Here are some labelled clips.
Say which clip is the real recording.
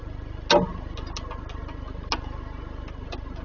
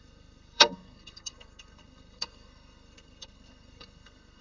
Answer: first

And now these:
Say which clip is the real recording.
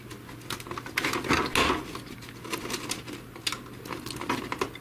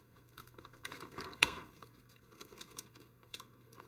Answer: first